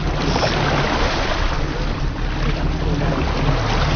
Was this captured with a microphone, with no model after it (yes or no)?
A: yes